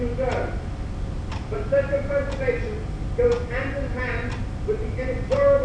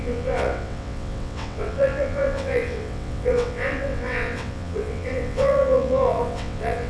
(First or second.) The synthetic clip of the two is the second